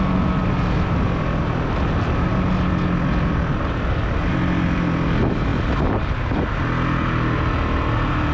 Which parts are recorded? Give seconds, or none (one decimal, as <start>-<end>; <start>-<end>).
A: 0.0-8.3